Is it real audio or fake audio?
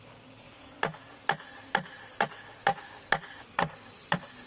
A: real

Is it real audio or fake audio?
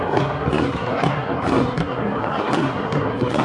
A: fake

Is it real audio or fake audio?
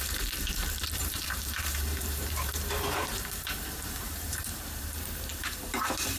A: fake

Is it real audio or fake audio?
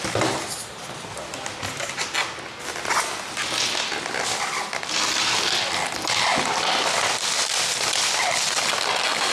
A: real